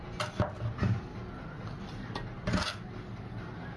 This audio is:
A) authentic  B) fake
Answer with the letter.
A